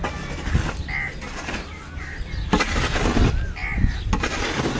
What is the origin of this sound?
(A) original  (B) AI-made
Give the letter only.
A